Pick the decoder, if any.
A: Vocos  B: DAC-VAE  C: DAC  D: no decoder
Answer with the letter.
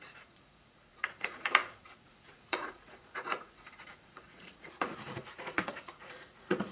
A